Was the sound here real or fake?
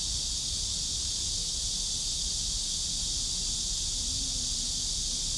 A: real